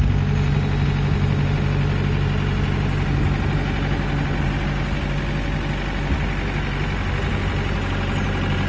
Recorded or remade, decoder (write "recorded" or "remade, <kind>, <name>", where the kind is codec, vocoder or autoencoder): recorded